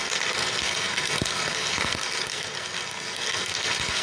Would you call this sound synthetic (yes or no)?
yes